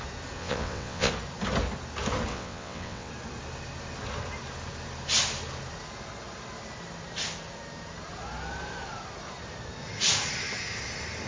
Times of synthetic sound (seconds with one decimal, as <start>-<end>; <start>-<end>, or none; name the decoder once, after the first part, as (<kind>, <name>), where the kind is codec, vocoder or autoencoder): 0.4-1.1 (vocoder, WaveNeXt); 2.3-3.1